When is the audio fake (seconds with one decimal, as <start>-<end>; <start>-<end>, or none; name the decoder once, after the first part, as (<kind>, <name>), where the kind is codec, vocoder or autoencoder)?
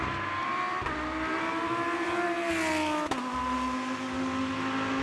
0.5-2.5 (vocoder, BigVGAN v2)